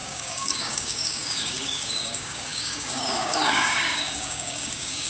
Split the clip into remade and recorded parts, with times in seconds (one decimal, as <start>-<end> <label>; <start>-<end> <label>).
0.0-5.1 remade